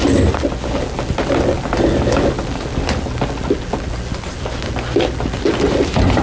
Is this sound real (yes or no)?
yes